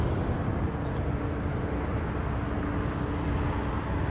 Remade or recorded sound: recorded